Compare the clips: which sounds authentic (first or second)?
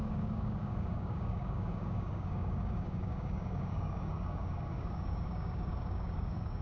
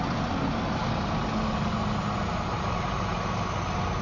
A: second